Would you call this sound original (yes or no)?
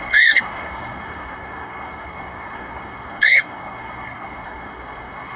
no